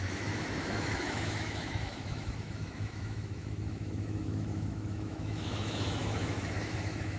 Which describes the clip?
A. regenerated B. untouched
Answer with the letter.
A